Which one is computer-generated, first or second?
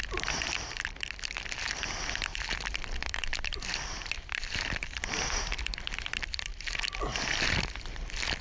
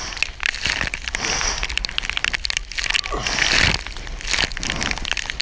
first